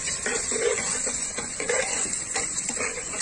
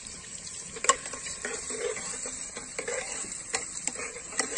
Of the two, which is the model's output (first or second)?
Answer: first